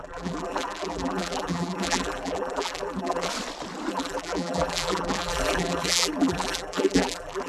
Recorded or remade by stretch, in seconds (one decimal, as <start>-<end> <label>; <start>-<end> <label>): 0.0-3.3 remade; 3.3-3.9 recorded; 3.9-7.5 remade